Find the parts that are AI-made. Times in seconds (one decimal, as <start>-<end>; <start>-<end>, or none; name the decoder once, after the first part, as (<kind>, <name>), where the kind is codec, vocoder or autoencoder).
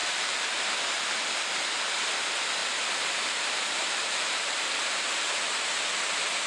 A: 0.0-1.0 (vocoder, BigVGAN v2); 2.6-5.1